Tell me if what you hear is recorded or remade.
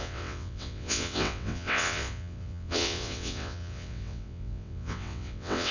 remade